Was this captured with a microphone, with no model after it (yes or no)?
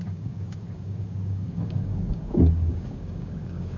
no